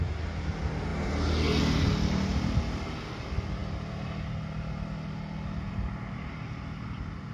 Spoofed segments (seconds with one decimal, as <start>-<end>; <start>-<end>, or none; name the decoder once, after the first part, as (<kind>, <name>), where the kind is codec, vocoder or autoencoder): none